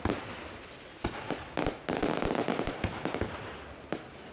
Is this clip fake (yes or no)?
no